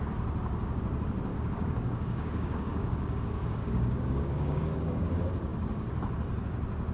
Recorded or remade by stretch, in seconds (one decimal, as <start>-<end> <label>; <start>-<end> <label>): 0.0-1.3 recorded; 1.3-5.1 remade; 5.1-6.9 recorded